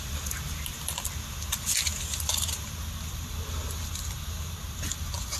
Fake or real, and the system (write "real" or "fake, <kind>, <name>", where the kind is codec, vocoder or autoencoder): real